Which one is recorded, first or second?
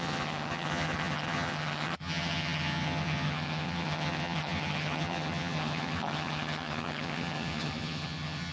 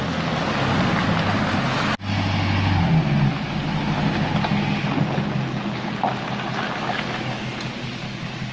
second